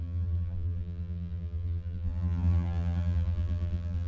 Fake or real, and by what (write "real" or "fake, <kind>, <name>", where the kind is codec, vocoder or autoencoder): fake, vocoder, BigVGAN v2